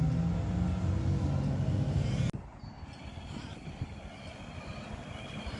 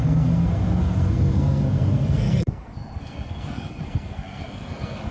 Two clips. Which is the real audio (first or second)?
first